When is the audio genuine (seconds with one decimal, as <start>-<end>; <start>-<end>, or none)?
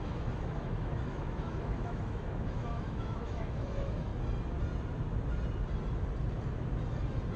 4.1-7.4